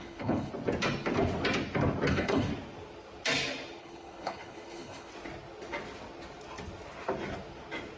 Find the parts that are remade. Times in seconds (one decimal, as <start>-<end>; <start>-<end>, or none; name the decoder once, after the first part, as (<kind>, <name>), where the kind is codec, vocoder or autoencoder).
0.0-0.5 (codec, HILCodec); 2.1-2.5; 3.8-5.1